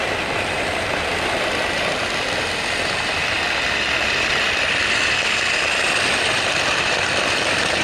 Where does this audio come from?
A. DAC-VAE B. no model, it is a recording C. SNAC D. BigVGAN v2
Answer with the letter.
D